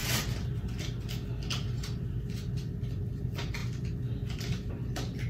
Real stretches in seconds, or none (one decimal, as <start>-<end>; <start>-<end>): 0.0-5.3